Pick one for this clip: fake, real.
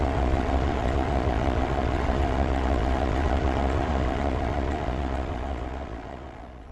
fake